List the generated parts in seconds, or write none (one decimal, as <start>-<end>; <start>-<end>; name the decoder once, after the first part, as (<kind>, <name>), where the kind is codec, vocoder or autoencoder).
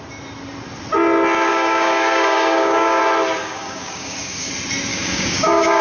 1.5-3.0 (codec, DAC); 3.4-4.5; 4.9-5.8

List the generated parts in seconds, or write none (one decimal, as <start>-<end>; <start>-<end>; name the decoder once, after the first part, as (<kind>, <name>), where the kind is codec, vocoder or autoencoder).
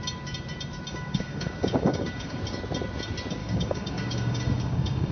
0.9-2.4 (codec, DAC); 3.4-5.1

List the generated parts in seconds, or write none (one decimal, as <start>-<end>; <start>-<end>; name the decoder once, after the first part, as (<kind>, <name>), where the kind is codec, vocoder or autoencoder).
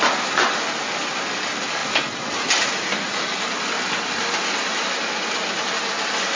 none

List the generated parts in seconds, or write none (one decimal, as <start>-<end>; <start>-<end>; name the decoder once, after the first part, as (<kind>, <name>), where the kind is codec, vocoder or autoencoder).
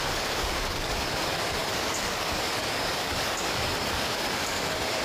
0.0-5.0 (codec, DAC)